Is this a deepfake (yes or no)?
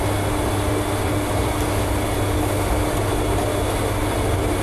no